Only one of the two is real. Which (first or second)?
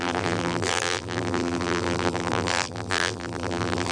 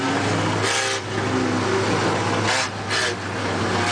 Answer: second